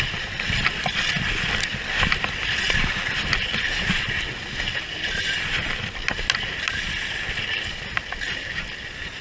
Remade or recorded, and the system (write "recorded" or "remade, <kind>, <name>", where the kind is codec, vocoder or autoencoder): recorded